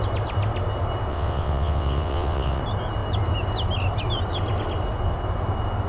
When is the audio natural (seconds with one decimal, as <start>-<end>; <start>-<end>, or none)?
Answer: 0.0-1.1; 2.6-5.9

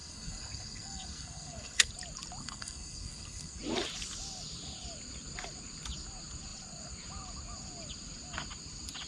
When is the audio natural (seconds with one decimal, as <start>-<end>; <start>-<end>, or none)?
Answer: 1.9-2.4; 3.6-9.1

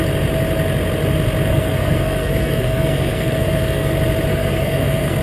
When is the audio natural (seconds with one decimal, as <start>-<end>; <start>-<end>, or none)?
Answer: 0.0-1.5; 3.9-4.3

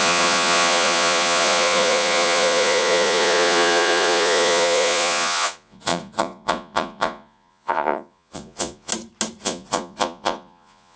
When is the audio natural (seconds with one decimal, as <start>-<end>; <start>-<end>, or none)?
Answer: 8.9-9.4

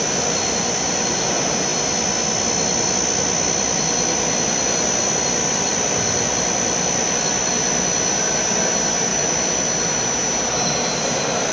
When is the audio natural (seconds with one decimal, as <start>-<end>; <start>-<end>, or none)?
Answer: 0.0-11.5

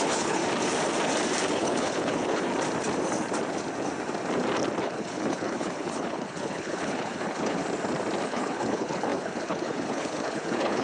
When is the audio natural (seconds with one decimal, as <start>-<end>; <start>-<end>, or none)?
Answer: 0.4-1.5; 2.5-4.8; 7.6-8.3

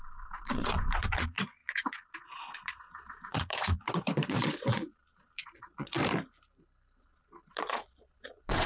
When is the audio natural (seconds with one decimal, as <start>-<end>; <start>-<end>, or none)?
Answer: 6.0-7.0